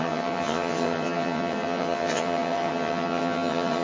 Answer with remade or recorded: remade